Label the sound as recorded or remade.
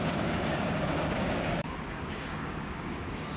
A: remade